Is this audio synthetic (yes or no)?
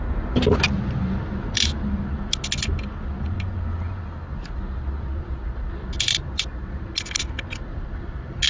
no